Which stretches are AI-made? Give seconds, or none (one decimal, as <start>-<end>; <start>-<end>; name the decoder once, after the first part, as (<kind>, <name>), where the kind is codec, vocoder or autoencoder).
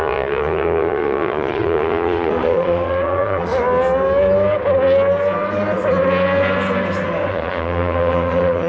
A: 0.0-3.5 (vocoder, Vocos); 7.3-8.7